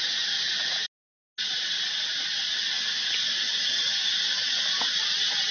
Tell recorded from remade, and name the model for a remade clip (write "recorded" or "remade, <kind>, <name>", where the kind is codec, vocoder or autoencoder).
recorded